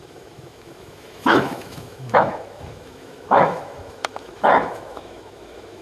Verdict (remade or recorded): remade